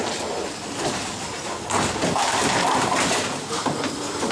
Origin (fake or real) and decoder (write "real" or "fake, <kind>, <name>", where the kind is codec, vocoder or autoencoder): real